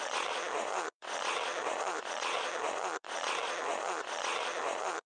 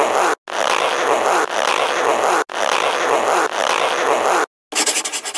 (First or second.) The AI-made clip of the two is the first